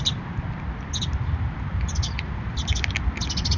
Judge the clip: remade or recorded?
recorded